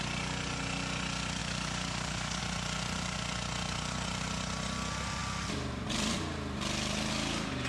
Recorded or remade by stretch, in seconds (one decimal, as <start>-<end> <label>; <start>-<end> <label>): 0.0-1.4 recorded; 1.4-2.4 remade; 2.4-7.7 recorded